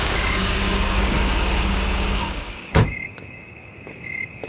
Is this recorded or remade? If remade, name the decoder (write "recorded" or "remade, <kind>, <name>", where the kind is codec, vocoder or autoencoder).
remade, codec, DAC